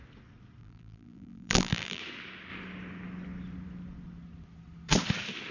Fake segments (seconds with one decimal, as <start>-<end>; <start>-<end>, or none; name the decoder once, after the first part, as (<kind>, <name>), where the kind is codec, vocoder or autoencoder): 0.6-2.0 (vocoder, BigVGAN v2)